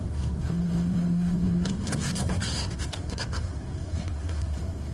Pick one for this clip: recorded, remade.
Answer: remade